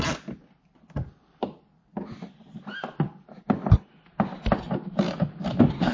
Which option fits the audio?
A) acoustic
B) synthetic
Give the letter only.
A